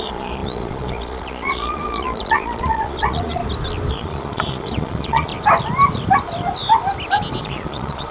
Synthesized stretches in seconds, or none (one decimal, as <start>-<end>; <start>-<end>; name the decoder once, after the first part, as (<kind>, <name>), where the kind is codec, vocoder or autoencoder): 0.0-3.4 (vocoder, Vocos); 3.9-5.3; 7.4-8.1